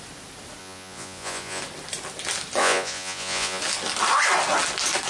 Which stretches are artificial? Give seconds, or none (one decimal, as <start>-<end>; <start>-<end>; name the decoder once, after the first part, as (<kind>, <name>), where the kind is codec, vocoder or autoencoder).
0.6-1.6 (vocoder, Vocos); 2.6-3.6